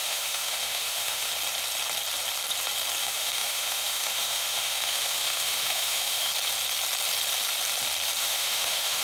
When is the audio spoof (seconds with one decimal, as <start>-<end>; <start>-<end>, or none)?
0.0-1.3; 3.0-6.3; 8.2-9.0